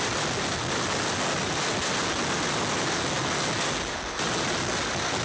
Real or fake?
real